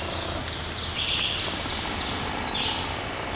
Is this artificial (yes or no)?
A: no